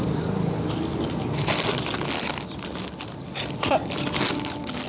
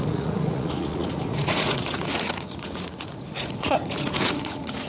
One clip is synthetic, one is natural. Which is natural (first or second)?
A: first